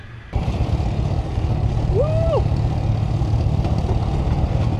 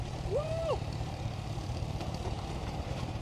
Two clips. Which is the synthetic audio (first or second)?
second